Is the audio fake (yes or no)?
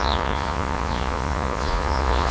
yes